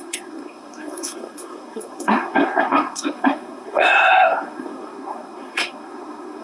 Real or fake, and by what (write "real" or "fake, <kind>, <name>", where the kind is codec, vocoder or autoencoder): fake, codec, SNAC